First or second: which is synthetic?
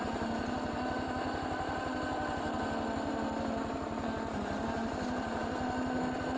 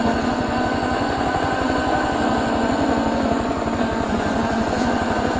second